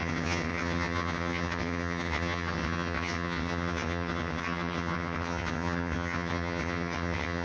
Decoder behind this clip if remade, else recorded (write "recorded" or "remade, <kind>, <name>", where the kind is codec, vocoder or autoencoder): remade, vocoder, HiFi-GAN